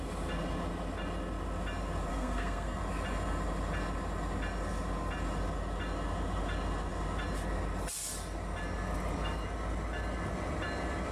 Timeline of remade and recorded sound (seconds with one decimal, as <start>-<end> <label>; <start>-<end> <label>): 0.0-2.1 recorded; 2.1-2.8 remade; 2.8-11.1 recorded